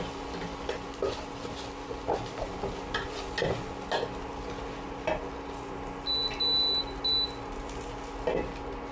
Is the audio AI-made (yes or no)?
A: no